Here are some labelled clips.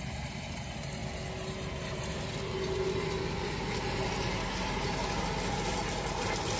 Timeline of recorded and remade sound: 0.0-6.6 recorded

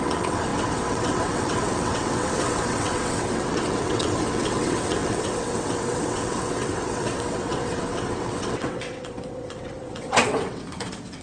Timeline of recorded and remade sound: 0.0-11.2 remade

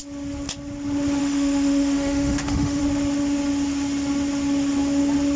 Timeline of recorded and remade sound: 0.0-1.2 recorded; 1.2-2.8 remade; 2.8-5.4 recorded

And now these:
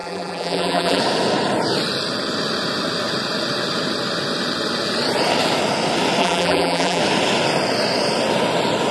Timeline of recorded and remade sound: 0.0-1.0 remade; 1.0-6.2 recorded; 6.2-7.0 remade; 7.0-8.9 recorded